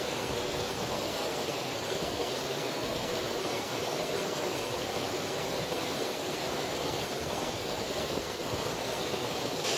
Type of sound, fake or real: fake